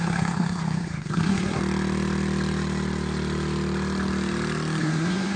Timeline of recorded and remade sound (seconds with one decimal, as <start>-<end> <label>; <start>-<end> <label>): 0.0-1.6 remade; 1.6-4.8 recorded; 4.8-5.4 remade